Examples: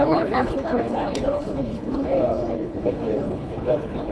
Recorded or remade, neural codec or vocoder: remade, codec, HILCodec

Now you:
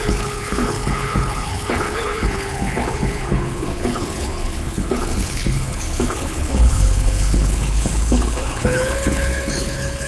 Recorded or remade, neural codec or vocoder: remade, codec, HILCodec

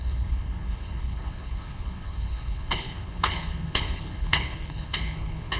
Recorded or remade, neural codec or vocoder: remade, codec, HILCodec